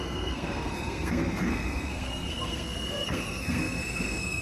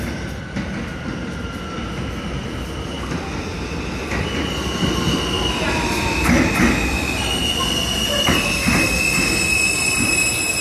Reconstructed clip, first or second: first